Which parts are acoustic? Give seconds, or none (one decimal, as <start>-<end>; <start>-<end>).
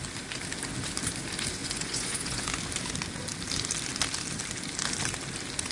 0.0-1.6; 2.6-5.7